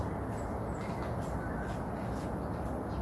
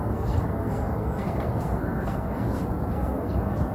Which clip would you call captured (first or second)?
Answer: first